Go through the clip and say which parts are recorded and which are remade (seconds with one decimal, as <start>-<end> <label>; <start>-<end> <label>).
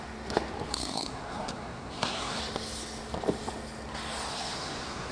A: 0.0-0.7 recorded; 0.7-2.4 remade; 2.4-4.3 recorded; 4.3-5.1 remade